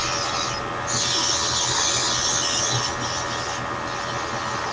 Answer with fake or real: real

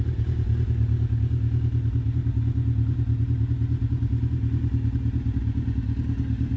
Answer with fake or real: real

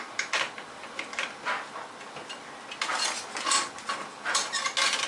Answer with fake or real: real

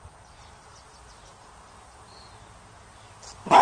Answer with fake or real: real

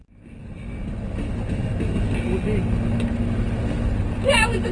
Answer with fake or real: real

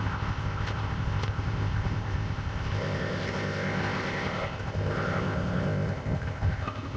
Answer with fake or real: fake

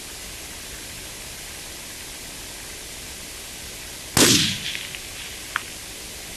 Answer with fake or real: real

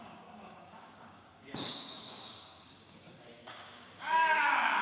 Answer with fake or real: fake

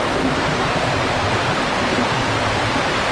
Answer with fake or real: fake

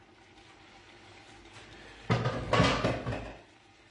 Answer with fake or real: real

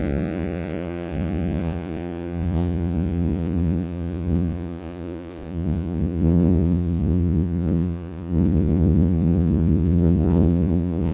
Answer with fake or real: fake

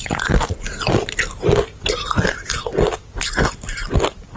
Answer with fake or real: real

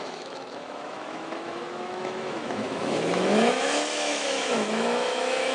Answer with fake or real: fake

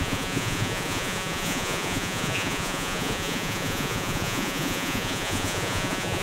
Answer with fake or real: fake